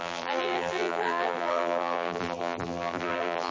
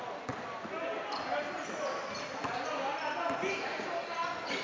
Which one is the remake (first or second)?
first